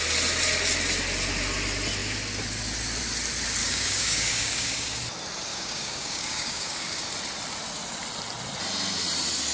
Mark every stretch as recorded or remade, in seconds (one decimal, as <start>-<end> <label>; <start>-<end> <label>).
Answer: 0.0-3.6 recorded; 3.6-5.0 remade; 5.0-5.5 recorded; 5.5-7.1 remade; 7.1-9.5 recorded